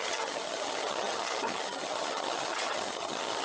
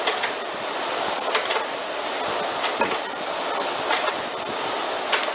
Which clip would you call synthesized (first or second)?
first